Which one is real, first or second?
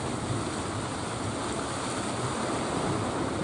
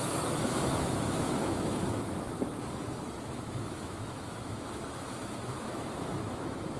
first